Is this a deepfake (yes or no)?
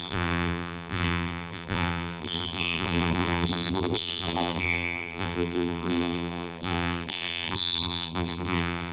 yes